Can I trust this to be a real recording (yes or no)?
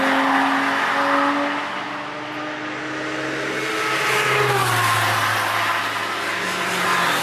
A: yes